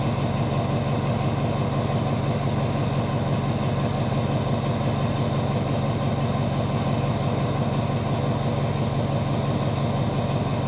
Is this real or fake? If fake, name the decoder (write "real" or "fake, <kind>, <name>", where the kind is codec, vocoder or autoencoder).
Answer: real